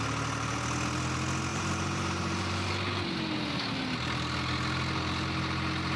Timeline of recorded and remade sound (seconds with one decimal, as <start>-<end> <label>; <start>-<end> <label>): 0.0-1.5 recorded; 1.5-2.7 remade; 2.7-6.0 recorded